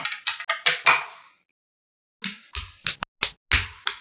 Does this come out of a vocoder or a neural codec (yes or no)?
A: no